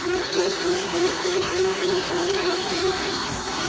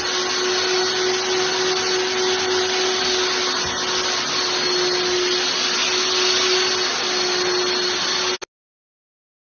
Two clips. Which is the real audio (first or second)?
second